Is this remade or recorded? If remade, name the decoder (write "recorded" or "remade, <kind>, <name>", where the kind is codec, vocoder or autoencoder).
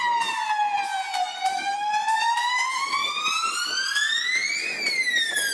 recorded